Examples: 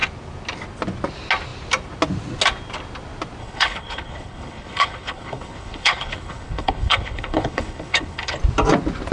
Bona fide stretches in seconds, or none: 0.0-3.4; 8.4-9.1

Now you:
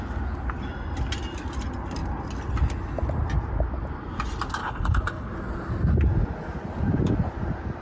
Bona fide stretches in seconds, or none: 0.0-4.6; 5.3-7.8

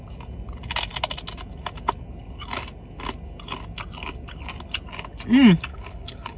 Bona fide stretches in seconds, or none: 0.0-5.7

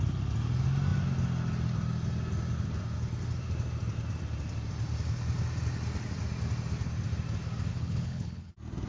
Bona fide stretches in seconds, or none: 0.0-7.7; 8.5-8.9